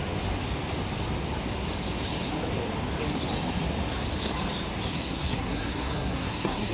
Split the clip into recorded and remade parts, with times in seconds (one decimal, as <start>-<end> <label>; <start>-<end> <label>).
0.0-4.9 recorded; 4.9-6.7 remade

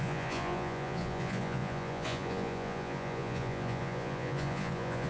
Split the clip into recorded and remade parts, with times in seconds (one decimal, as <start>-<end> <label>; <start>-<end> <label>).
0.0-5.1 remade

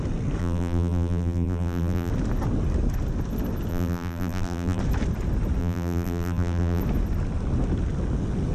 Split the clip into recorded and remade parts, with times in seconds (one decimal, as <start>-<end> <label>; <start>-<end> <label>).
0.0-0.4 recorded; 0.4-2.1 remade; 2.1-3.7 recorded; 3.7-4.8 remade; 4.8-5.6 recorded; 5.6-6.8 remade; 6.8-8.5 recorded

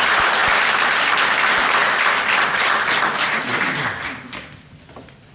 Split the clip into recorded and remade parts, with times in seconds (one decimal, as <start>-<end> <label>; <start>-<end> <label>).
0.0-5.3 recorded